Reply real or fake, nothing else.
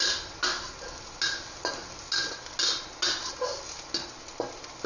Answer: real